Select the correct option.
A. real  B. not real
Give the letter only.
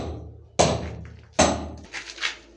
A